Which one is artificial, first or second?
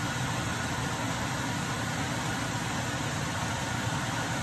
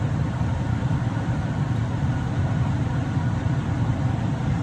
second